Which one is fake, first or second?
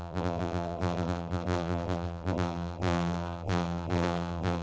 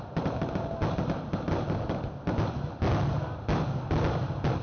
first